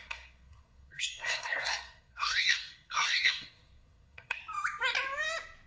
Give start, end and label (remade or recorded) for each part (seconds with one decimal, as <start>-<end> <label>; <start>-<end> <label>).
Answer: 0.0-4.4 remade; 4.4-5.7 recorded